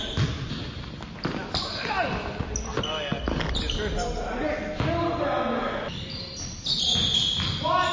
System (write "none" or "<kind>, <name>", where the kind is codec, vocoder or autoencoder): none